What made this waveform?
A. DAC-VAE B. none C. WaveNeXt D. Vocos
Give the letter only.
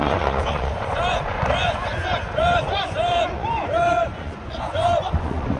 D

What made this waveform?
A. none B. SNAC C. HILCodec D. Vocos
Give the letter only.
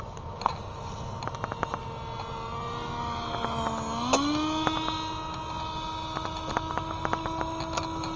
A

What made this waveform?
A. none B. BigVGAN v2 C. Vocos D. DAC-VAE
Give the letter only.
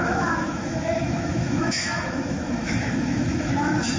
D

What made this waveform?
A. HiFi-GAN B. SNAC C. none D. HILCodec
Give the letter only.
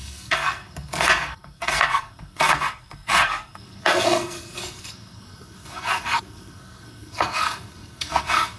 B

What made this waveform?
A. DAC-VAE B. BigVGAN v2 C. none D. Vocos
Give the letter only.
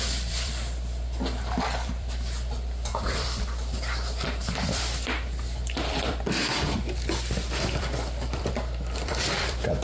B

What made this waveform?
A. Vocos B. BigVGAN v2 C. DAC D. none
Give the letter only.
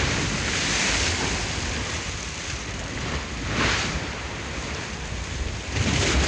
B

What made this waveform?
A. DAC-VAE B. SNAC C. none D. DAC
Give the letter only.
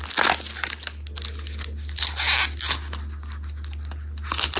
C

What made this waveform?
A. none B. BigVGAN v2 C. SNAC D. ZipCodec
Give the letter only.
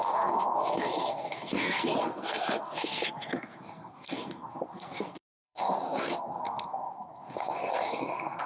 C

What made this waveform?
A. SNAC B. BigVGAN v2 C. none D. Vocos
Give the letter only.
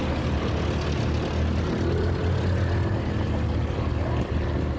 C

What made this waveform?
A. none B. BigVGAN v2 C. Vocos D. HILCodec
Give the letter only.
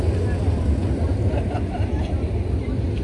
B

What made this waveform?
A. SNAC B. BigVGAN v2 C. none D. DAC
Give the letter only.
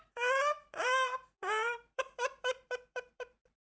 B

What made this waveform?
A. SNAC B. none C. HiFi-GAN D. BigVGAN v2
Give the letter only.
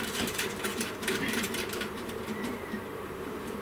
D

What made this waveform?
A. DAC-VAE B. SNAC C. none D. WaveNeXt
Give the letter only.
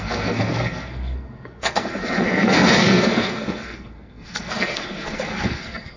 B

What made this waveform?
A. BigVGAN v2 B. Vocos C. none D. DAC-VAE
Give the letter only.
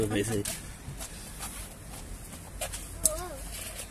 C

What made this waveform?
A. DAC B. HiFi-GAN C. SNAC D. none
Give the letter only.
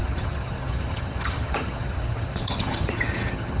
B